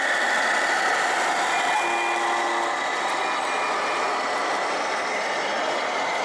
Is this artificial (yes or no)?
no